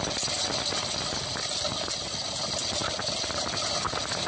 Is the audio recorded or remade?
recorded